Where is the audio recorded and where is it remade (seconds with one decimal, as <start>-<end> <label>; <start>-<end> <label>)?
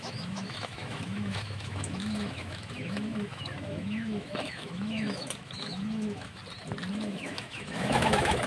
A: 0.0-6.4 remade; 6.4-6.9 recorded; 6.9-8.5 remade